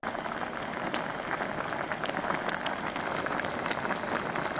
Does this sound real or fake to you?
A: real